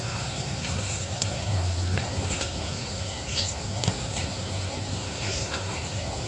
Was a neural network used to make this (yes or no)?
yes